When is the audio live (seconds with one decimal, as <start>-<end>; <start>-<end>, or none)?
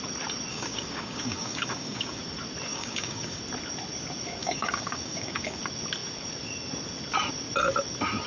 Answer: 0.0-0.5; 2.2-2.7; 3.4-4.4; 5.6-8.3